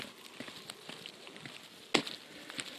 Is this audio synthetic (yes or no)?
no